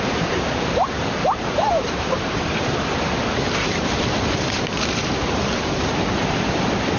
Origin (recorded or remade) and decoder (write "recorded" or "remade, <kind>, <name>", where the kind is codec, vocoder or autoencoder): remade, vocoder, BigVGAN v2